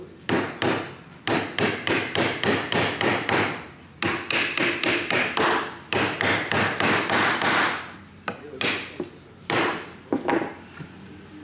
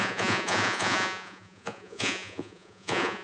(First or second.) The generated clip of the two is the second